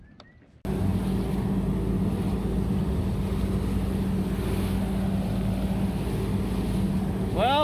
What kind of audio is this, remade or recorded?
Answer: recorded